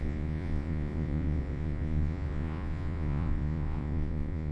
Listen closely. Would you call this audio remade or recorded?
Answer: remade